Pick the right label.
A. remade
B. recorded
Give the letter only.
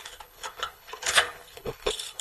A